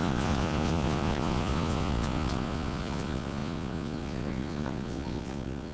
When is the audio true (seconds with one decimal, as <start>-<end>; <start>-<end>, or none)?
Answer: none